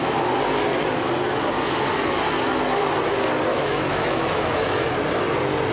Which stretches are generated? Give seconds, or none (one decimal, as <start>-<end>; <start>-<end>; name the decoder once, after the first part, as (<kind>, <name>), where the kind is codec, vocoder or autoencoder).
3.5-4.9 (autoencoder, DAC-VAE)